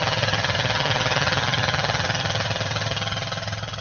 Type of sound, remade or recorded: remade